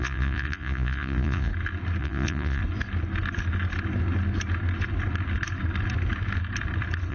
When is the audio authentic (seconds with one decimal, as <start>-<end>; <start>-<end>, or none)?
1.5-2.0; 2.6-7.1